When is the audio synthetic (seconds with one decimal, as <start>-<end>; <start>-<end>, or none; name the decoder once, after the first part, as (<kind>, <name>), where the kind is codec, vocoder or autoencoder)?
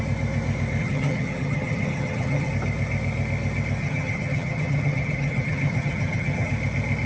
0.8-2.5 (vocoder, HiFi-GAN); 3.8-6.5